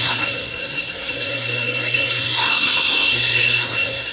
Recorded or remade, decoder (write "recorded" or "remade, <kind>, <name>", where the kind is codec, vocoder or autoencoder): remade, codec, SNAC